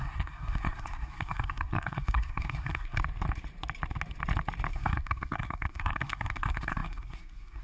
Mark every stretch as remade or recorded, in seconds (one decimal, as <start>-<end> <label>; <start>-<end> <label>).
0.0-3.0 remade; 3.0-4.7 recorded; 4.7-7.6 remade